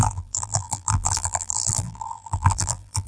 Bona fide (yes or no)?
no